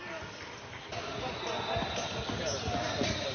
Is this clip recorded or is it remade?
recorded